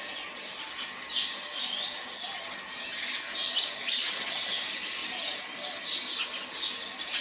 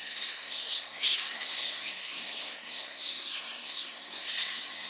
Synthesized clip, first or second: second